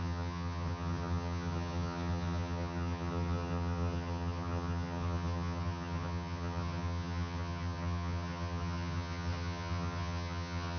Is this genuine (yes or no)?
no